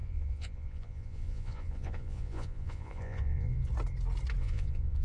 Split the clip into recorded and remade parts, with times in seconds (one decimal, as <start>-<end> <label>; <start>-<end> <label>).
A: 0.0-3.7 remade; 3.7-4.4 recorded; 4.4-5.0 remade